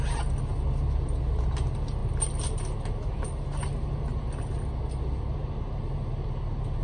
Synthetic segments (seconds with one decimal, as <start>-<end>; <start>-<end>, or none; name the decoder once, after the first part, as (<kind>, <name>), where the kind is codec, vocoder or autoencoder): none